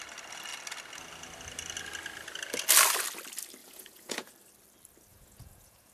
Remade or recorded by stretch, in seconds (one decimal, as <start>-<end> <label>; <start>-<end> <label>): 0.0-3.6 recorded; 3.6-4.3 remade; 4.3-5.1 recorded; 5.1-5.9 remade